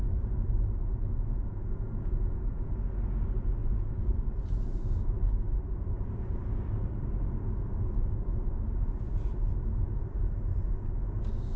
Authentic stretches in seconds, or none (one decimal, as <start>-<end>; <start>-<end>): 0.0-0.8; 2.7-3.6; 4.3-11.6